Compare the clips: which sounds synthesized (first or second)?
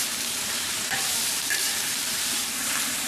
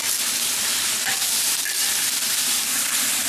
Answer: first